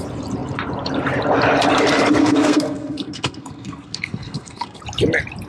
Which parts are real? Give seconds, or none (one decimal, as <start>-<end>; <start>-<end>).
0.0-2.2; 4.8-5.5